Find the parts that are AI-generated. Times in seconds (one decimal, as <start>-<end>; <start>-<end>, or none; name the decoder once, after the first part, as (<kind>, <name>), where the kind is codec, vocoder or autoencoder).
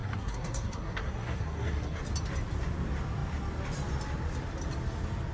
0.0-2.0 (codec, SNAC)